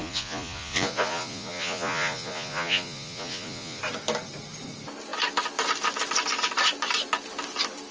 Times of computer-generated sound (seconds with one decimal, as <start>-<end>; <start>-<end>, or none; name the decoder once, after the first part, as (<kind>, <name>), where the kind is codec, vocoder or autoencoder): 0.0-3.8 (vocoder, Vocos)